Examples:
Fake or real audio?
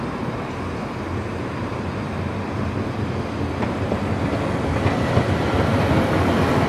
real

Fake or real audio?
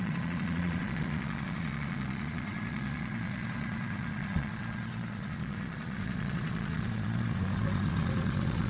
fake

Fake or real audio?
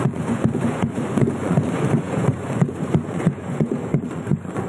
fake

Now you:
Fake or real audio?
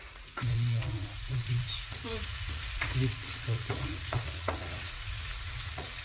fake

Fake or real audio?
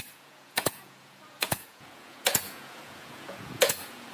fake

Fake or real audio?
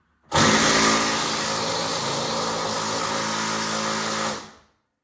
real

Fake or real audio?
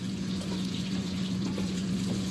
fake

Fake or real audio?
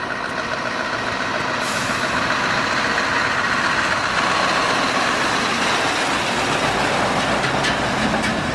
real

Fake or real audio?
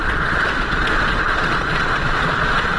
fake